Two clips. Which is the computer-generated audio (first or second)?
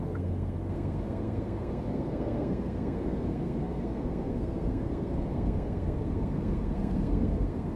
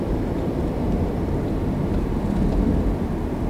first